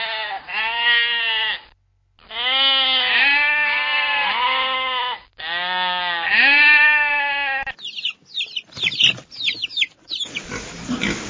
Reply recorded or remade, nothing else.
recorded